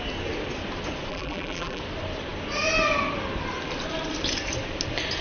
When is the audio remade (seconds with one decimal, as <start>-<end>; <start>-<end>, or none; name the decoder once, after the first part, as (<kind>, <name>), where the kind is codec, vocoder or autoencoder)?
1.1-1.8 (vocoder, BigVGAN v2)